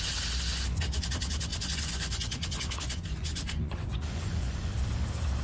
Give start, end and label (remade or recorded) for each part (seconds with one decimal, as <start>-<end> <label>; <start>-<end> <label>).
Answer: 0.0-1.5 recorded; 1.5-4.7 remade; 4.7-5.4 recorded